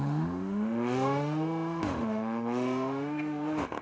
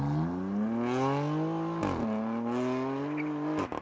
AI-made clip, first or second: first